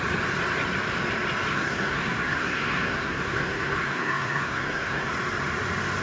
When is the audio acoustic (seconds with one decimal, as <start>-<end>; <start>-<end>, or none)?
0.0-1.5; 5.1-6.0